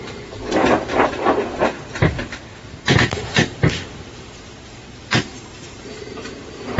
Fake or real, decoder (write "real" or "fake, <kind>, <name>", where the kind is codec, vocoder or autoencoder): fake, vocoder, BigVGAN v2